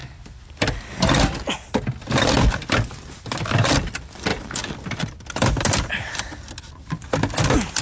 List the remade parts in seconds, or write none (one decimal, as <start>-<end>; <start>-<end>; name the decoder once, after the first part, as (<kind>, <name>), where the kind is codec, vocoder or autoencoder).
none

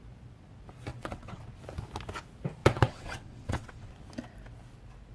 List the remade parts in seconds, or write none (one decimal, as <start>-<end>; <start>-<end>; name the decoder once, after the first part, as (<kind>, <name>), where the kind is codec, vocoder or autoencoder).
0.9-1.4 (vocoder, WaveNeXt); 2.6-3.9